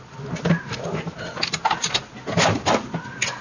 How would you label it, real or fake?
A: real